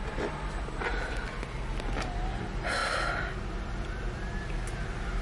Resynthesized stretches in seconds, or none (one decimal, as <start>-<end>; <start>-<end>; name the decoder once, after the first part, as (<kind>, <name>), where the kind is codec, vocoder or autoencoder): none